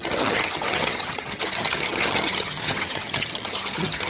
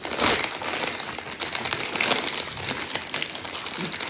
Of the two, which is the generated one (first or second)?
first